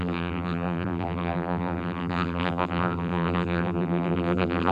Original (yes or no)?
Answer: no